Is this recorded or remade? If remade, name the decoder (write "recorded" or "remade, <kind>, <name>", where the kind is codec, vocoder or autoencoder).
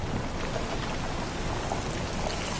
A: recorded